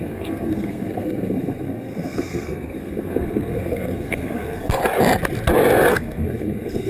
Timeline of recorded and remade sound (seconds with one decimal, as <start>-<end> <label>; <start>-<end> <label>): 0.0-4.8 remade; 4.8-5.9 recorded; 5.9-6.9 remade

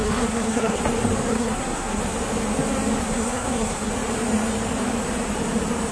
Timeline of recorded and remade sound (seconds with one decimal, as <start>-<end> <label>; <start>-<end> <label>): 0.0-0.8 remade; 0.8-1.3 recorded; 1.3-2.0 remade; 2.0-3.0 recorded; 3.0-3.9 remade; 3.9-5.9 recorded

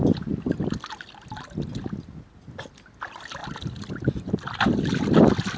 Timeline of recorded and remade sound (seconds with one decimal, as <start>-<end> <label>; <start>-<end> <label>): 0.0-5.6 recorded

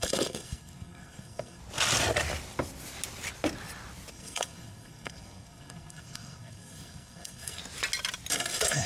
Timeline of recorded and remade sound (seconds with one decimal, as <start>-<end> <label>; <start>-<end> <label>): 0.0-1.6 remade; 1.6-4.1 recorded; 4.1-7.6 remade; 7.6-8.3 recorded; 8.3-8.9 remade

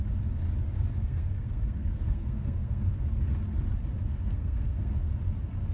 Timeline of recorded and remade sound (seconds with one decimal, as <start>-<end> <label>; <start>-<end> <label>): 0.0-1.0 recorded; 1.0-2.9 remade; 2.9-4.1 recorded; 4.1-5.1 remade; 5.1-5.7 recorded

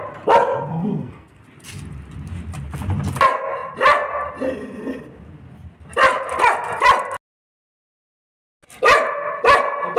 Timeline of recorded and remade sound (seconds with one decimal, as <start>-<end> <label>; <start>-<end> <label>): 0.0-0.7 recorded; 0.7-1.4 remade; 1.4-10.0 recorded